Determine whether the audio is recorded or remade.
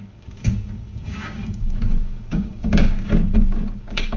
remade